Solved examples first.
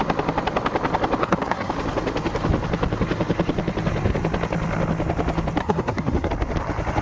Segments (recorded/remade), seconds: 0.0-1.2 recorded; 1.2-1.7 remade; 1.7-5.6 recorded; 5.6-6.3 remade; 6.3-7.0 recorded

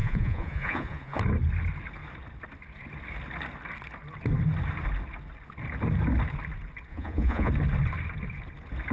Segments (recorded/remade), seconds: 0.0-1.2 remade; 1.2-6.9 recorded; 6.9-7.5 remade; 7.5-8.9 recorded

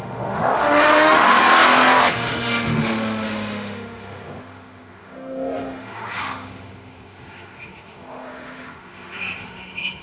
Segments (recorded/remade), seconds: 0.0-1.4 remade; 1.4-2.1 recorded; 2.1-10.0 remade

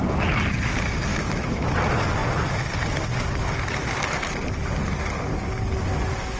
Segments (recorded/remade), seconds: 0.0-1.1 recorded; 1.1-1.7 remade; 1.7-6.4 recorded

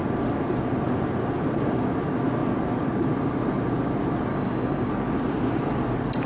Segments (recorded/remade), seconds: 0.0-4.3 recorded; 4.3-4.9 remade; 4.9-6.3 recorded

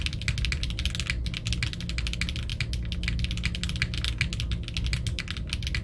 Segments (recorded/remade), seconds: 0.0-5.8 recorded